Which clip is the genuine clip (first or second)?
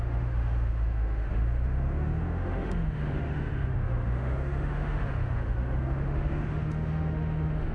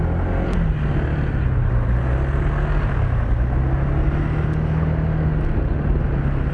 second